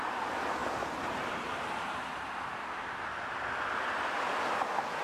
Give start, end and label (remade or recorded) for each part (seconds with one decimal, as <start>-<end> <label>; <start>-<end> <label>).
0.0-0.6 recorded; 0.6-2.3 remade; 2.3-5.0 recorded